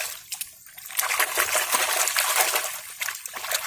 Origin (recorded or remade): recorded